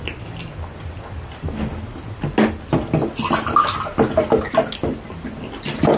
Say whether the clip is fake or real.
real